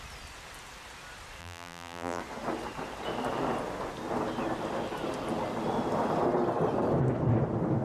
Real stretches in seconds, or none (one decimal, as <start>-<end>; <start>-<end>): 0.0-1.4; 2.2-7.8